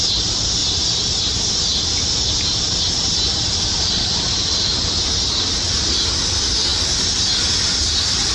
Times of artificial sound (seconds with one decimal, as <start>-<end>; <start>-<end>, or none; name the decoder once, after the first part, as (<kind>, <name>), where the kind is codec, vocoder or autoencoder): none